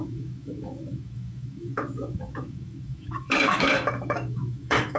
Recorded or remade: remade